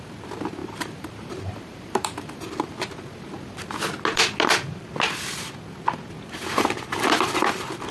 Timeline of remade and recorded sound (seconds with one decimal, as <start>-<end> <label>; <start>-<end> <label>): 0.0-0.6 recorded; 0.6-2.7 remade; 2.7-7.9 recorded